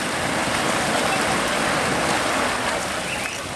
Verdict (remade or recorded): recorded